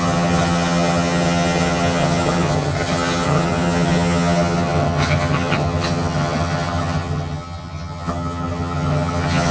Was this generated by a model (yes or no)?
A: yes